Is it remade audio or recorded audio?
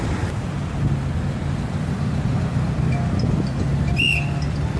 recorded